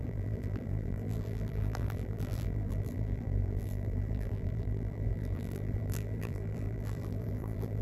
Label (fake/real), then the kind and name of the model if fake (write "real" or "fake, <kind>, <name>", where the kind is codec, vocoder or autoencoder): fake, vocoder, BigVGAN v2